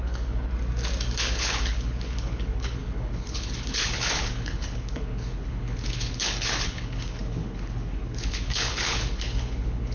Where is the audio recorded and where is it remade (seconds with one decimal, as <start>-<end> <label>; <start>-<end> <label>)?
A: 0.0-0.5 remade; 0.5-1.2 recorded; 1.2-9.9 remade